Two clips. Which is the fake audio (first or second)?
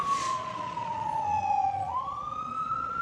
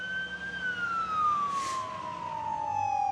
first